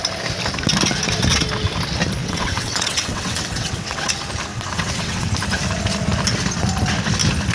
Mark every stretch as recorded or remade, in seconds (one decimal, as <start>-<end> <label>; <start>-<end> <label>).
0.0-2.2 recorded; 2.2-4.1 remade; 4.1-4.5 recorded; 4.5-5.3 remade; 5.3-7.5 recorded